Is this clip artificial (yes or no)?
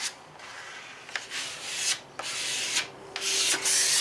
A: no